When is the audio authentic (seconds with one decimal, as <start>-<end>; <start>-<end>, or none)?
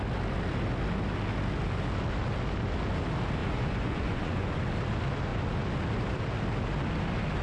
0.0-3.4; 4.6-7.4